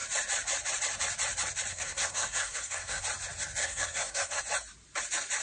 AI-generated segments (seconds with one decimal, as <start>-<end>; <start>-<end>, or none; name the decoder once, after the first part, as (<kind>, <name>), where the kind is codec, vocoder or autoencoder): 1.7-3.0 (codec, SNAC); 3.6-4.4